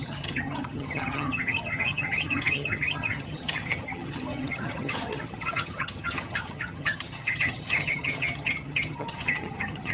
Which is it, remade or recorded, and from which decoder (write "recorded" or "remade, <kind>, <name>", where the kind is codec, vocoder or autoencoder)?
remade, vocoder, HiFi-GAN